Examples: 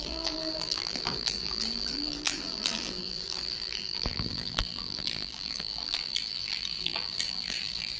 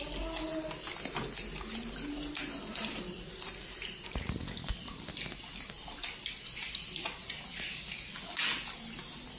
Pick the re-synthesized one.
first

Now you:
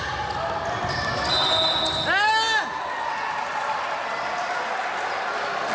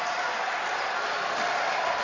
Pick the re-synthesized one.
second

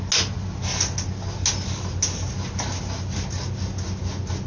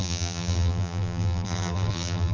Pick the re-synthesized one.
second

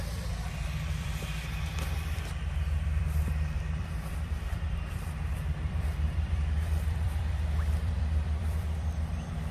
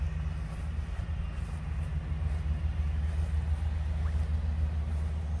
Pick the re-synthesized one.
first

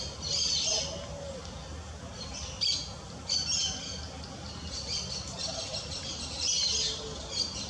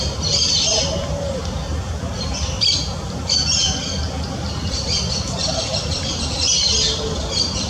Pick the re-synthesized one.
second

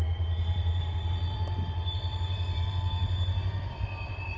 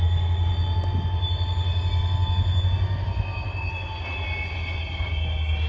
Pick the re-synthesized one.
first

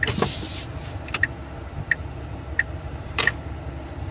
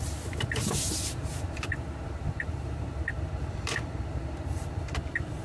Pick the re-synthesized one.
second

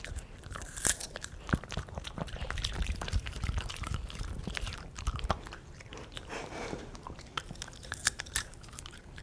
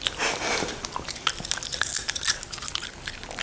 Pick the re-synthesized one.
first